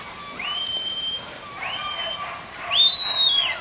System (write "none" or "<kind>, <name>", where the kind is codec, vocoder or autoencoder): none